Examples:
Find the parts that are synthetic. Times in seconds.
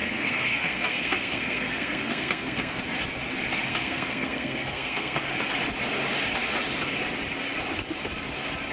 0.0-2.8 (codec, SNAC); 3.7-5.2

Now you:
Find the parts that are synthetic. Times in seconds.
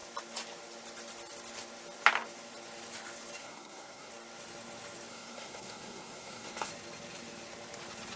3.4-4.1 (codec, SNAC); 5.1-6.7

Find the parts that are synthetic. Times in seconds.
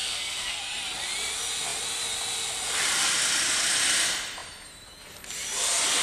0.0-0.6 (codec, SNAC)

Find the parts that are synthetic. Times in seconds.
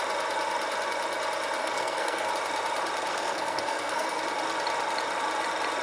1.6-2.3 (codec, SNAC); 3.1-4.2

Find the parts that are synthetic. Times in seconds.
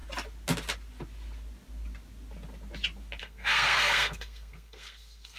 3.2-5.4 (codec, SNAC)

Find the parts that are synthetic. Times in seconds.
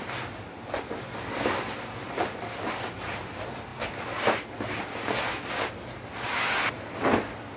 none